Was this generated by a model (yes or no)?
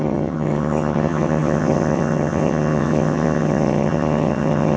yes